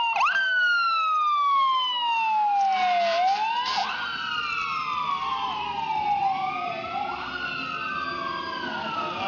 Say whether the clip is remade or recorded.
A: recorded